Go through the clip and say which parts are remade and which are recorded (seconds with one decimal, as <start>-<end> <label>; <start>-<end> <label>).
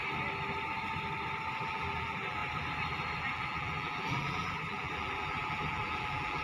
0.0-1.6 recorded; 1.6-2.4 remade; 2.4-3.3 recorded; 3.3-6.4 remade